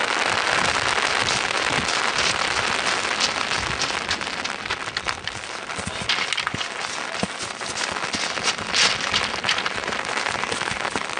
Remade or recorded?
recorded